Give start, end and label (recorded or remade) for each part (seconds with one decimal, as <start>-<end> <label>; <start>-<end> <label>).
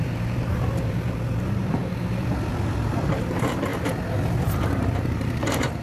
0.0-1.8 remade; 1.8-2.5 recorded; 2.5-3.7 remade; 3.7-4.4 recorded; 4.4-5.8 remade